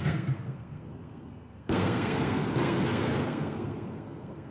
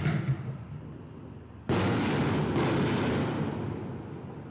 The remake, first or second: first